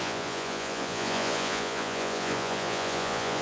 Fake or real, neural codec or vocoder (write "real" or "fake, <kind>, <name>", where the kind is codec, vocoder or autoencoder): fake, vocoder, Vocos